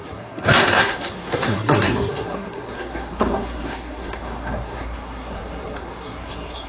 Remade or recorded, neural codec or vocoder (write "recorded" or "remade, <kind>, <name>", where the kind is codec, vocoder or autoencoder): remade, codec, SNAC